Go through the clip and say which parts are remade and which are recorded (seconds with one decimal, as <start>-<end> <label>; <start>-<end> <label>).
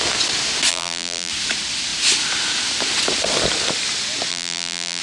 0.0-0.7 recorded; 0.7-1.3 remade; 1.3-4.3 recorded; 4.3-5.0 remade